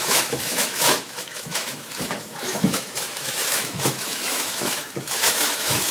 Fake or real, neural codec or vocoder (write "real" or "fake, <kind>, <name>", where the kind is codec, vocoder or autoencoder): fake, autoencoder, DAC-VAE